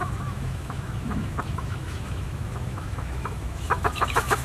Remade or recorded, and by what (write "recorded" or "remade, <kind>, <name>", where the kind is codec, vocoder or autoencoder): remade, autoencoder, DAC-VAE